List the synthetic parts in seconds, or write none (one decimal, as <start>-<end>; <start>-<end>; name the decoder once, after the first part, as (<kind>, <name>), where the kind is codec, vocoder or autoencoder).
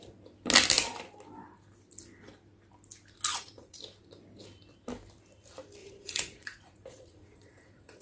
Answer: 3.3-3.8 (vocoder, Vocos); 5.8-8.0